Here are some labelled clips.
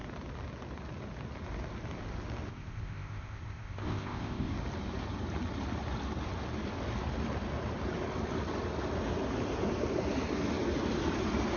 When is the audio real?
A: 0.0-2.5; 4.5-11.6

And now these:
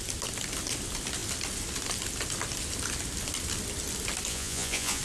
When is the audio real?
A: 0.0-4.3

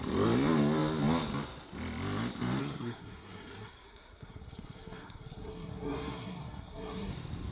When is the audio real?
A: 0.0-2.6; 7.1-7.5

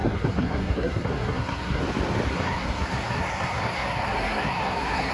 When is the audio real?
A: 1.8-2.3

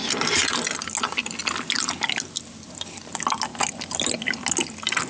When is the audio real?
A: 0.0-5.1

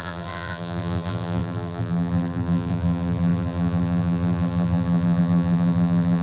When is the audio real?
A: none

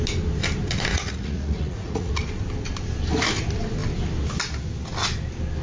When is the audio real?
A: 0.0-0.9; 2.1-5.6